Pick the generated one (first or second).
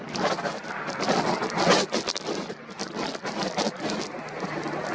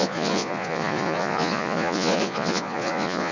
second